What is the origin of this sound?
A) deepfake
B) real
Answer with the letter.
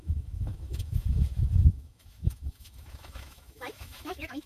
A